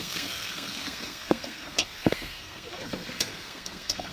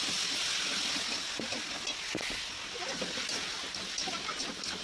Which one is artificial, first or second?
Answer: first